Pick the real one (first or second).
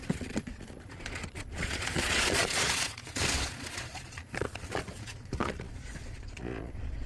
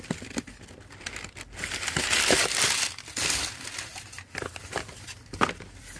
second